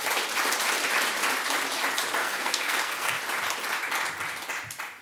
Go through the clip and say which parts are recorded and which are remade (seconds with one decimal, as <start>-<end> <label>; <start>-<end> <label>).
0.0-2.2 recorded; 2.2-3.2 remade; 3.2-5.0 recorded